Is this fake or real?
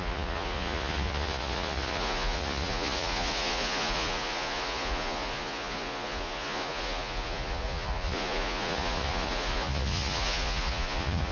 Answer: fake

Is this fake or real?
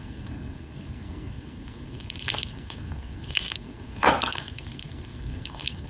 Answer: fake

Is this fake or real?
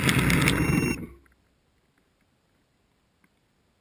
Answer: real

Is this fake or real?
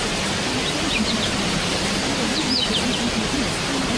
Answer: fake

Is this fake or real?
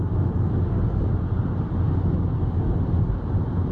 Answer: real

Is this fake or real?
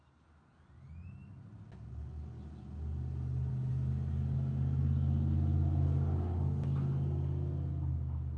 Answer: real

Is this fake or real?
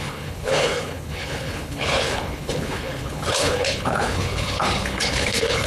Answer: fake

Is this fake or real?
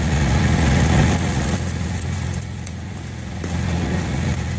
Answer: fake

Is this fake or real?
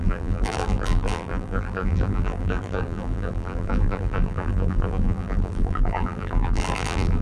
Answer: fake